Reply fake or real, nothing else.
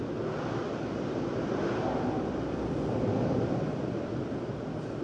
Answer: real